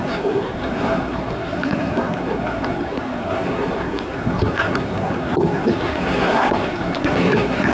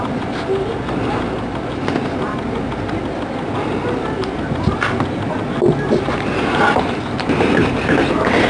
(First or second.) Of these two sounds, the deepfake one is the first